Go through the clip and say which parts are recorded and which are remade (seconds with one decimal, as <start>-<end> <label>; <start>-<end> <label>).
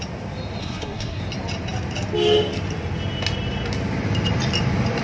0.0-0.6 recorded; 0.6-1.2 remade; 1.2-5.0 recorded